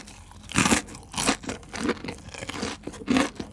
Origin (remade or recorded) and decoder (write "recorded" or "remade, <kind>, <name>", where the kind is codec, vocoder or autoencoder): recorded